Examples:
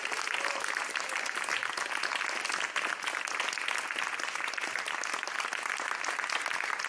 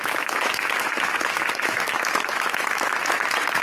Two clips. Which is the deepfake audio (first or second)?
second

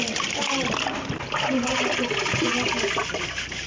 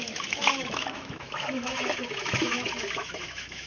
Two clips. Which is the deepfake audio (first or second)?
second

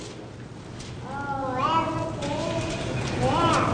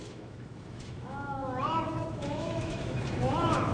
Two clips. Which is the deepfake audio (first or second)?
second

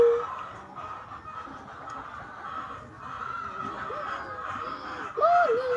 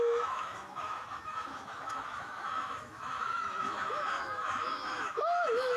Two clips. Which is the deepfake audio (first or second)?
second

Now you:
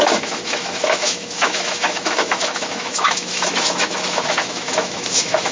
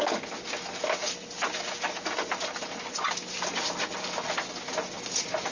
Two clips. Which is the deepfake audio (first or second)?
first